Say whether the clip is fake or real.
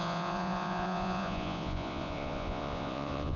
fake